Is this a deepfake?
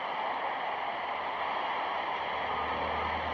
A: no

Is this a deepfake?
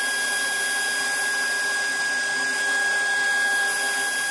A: no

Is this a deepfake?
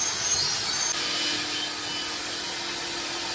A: no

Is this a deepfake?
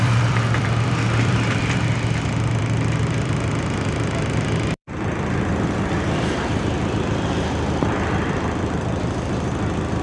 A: yes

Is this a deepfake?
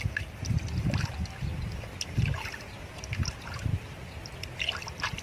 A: no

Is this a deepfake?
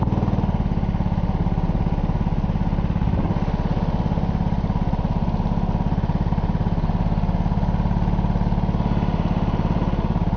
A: no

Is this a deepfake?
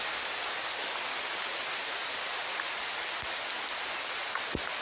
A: no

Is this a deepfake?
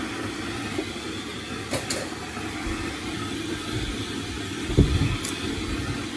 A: no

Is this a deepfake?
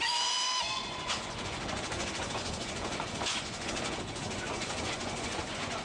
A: yes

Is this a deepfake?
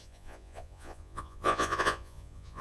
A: yes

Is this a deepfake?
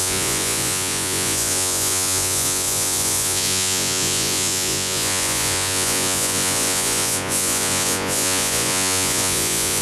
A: yes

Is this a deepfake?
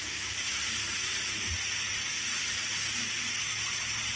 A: no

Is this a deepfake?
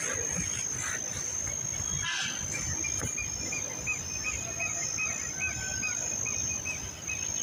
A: no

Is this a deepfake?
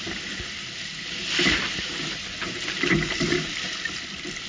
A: no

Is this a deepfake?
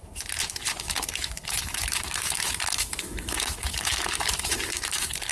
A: yes